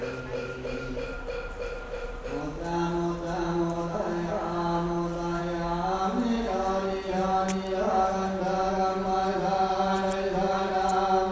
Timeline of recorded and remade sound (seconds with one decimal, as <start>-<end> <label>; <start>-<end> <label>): 0.0-11.3 recorded

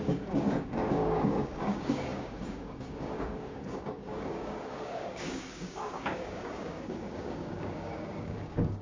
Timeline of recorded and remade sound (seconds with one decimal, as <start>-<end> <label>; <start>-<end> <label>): 0.0-8.8 remade

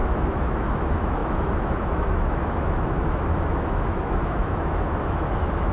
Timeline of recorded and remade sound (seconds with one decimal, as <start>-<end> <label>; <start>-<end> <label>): 0.0-5.7 remade